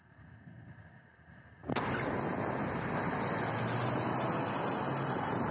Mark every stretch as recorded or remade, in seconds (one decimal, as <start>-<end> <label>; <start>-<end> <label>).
0.0-5.5 recorded